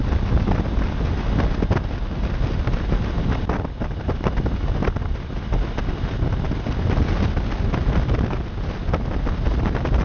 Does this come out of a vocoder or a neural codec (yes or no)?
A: no